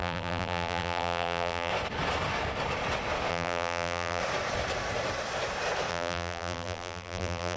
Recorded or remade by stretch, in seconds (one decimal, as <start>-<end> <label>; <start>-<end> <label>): 0.0-1.7 remade; 1.7-3.3 recorded; 3.3-4.2 remade; 4.2-5.9 recorded; 5.9-7.6 remade